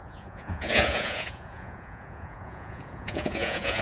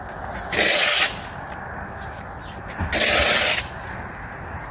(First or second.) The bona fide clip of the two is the second